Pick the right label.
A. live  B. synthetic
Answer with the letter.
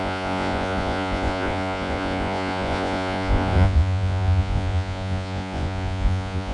B